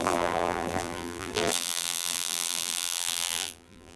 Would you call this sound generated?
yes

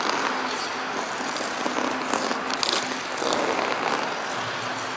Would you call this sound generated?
no